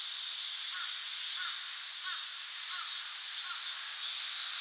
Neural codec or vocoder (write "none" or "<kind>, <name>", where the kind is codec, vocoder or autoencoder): none